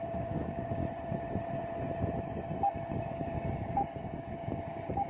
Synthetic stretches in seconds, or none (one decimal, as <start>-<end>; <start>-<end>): 0.0-0.8; 3.0-5.1